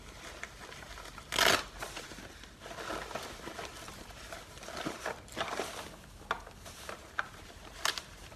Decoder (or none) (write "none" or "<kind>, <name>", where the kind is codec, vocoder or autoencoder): none